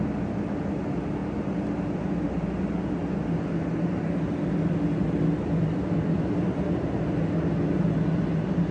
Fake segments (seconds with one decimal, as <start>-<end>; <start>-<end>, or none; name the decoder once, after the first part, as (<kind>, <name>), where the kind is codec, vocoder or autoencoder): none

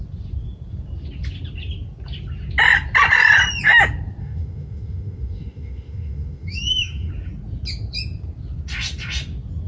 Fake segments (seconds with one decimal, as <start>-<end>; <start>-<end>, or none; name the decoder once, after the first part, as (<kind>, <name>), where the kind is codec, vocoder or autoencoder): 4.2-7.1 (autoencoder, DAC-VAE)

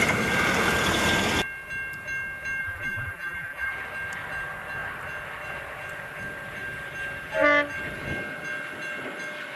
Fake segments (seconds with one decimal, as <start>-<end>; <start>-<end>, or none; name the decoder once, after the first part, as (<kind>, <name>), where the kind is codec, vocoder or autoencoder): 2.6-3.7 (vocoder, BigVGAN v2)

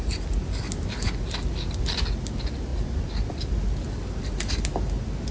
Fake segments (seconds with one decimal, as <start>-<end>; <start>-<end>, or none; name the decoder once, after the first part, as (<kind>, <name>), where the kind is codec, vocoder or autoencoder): none